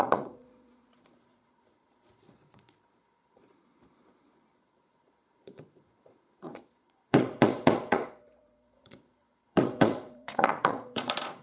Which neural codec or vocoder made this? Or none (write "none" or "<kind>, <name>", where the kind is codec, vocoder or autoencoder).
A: vocoder, Vocos